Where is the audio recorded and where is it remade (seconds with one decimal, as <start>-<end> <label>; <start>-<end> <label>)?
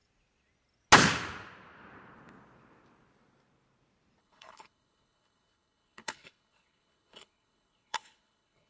0.0-4.2 recorded; 4.2-8.7 remade